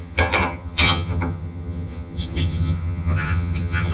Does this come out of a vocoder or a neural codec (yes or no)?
yes